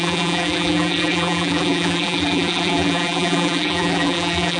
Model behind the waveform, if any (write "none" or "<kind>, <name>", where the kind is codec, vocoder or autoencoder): vocoder, BigVGAN v2